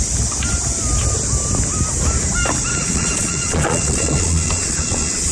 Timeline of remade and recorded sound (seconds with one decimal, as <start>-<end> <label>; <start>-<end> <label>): 0.0-2.7 recorded; 2.7-5.3 remade